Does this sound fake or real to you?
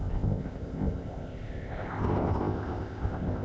fake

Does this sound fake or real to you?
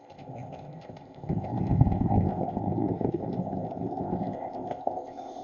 fake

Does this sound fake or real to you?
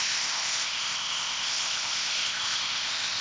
fake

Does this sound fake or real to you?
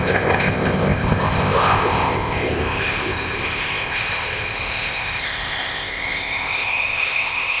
fake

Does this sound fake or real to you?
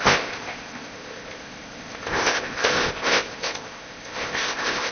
fake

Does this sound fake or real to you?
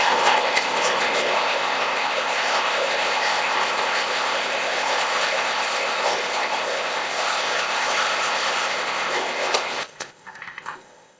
fake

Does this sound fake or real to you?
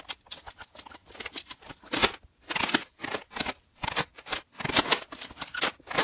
real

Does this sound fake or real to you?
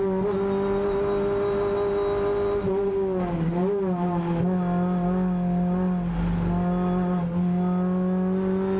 real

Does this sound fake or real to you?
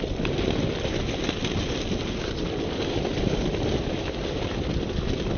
real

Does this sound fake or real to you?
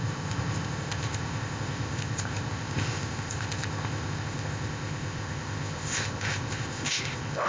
fake